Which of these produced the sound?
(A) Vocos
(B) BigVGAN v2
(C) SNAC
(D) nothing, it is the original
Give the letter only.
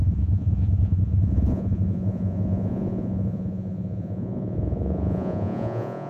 A